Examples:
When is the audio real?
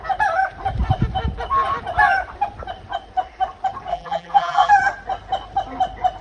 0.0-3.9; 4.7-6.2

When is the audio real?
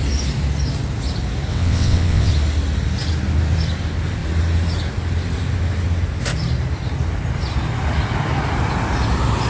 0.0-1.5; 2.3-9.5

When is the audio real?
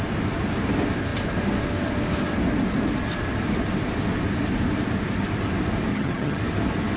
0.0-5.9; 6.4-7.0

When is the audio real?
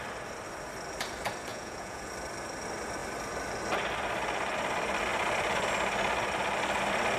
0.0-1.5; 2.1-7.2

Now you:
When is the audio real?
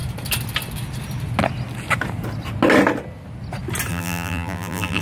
0.0-3.9